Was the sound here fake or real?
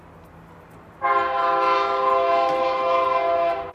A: real